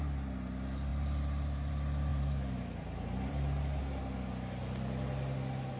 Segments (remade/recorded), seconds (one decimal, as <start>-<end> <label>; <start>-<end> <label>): 0.0-0.9 recorded; 0.9-1.7 remade; 1.7-2.1 recorded; 2.1-3.8 remade; 3.8-5.8 recorded

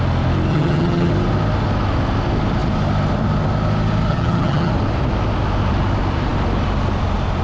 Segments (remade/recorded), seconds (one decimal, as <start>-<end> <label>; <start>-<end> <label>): 0.0-0.5 recorded; 0.5-1.1 remade; 1.1-4.1 recorded; 4.1-4.7 remade; 4.7-7.4 recorded

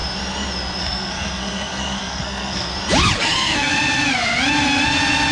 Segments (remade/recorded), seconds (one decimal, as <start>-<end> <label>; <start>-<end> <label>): 0.0-0.8 recorded; 0.8-2.7 remade; 2.7-3.2 recorded; 3.2-3.7 remade; 3.7-5.3 recorded

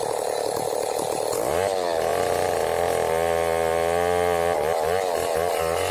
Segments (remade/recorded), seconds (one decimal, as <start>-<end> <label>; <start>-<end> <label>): 0.0-5.9 recorded

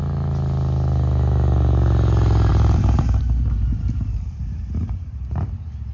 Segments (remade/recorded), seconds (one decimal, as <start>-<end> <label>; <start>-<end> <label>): 0.0-2.5 recorded; 2.5-5.4 remade; 5.4-5.9 recorded

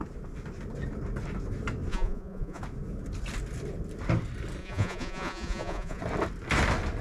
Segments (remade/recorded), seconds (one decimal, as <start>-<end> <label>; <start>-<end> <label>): 0.0-1.9 recorded; 1.9-2.6 remade; 2.6-4.6 recorded; 4.6-6.0 remade; 6.0-7.0 recorded

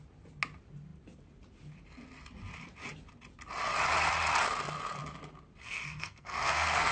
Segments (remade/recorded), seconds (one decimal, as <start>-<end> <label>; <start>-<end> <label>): 0.0-5.6 recorded; 5.6-6.9 remade

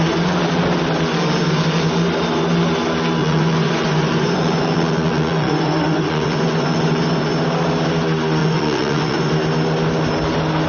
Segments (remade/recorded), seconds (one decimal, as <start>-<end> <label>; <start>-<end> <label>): 0.0-3.2 recorded; 3.2-7.3 remade; 7.3-8.4 recorded; 8.4-9.3 remade; 9.3-10.7 recorded